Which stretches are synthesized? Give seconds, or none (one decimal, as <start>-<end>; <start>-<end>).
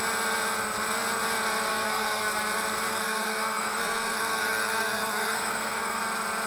1.7-2.2; 2.9-6.0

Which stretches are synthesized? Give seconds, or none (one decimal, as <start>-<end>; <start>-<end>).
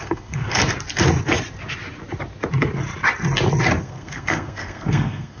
0.0-0.6; 3.8-5.4